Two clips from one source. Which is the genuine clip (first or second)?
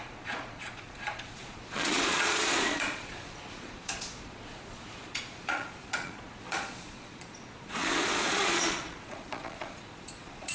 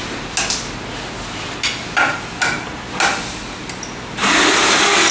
second